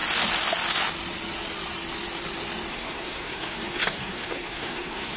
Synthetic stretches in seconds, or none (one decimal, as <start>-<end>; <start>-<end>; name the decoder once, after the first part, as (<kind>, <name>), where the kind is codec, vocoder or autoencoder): 2.7-5.2 (codec, SNAC)